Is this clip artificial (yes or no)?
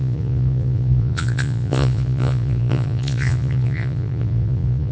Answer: yes